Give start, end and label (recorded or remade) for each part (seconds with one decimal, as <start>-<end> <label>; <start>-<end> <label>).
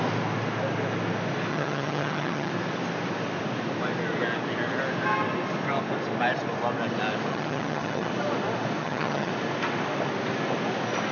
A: 0.0-1.5 recorded; 1.5-2.5 remade; 2.5-7.3 recorded; 7.3-8.1 remade; 8.1-8.8 recorded; 8.8-9.3 remade; 9.3-11.1 recorded